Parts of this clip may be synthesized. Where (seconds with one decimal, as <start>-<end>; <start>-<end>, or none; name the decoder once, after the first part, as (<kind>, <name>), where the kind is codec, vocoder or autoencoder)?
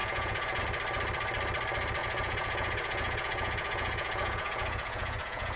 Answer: 0.0-0.6 (vocoder, Vocos); 2.0-5.6